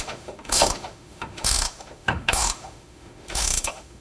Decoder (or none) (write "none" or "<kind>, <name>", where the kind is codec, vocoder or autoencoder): autoencoder, DAC-VAE